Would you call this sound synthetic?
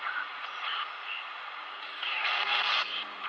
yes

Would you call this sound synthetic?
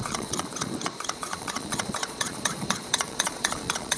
yes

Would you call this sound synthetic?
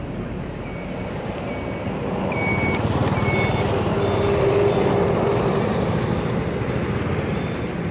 no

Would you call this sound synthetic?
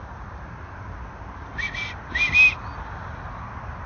no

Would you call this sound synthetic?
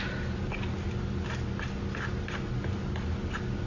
no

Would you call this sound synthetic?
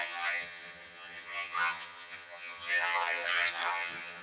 yes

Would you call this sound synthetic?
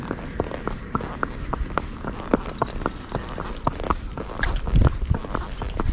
no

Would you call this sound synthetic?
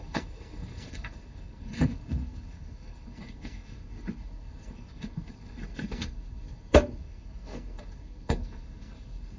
yes